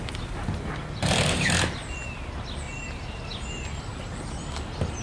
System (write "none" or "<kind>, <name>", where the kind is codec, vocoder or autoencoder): none